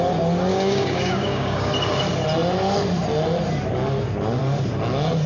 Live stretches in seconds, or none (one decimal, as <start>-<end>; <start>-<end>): 0.0-0.5; 1.7-5.3